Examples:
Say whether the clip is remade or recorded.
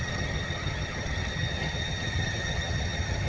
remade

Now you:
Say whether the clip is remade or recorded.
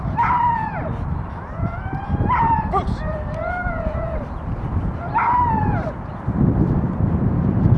remade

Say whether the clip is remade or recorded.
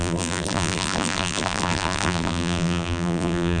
remade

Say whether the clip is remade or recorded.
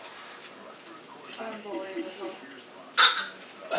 recorded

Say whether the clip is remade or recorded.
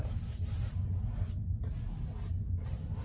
recorded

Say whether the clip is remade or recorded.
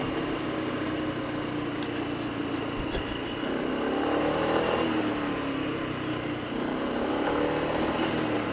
recorded